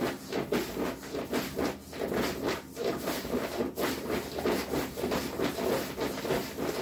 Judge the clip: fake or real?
real